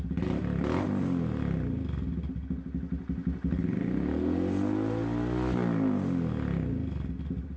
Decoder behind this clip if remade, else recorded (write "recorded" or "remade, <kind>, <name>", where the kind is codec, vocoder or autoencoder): recorded